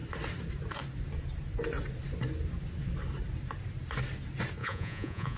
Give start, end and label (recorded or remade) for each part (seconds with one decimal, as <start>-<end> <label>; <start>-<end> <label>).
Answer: 0.0-4.6 recorded; 4.6-5.4 remade